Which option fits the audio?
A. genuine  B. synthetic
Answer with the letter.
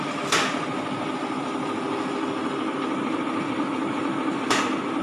A